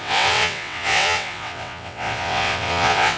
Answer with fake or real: fake